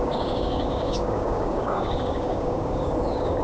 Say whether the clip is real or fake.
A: fake